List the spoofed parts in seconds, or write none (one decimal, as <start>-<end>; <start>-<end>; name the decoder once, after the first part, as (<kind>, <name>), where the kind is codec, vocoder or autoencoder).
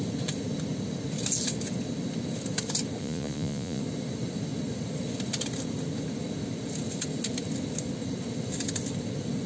3.0-3.8 (vocoder, Vocos)